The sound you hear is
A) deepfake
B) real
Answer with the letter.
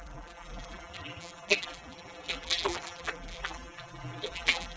A